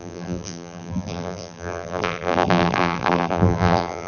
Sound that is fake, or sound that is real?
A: fake